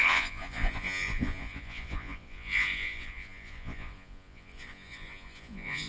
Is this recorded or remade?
remade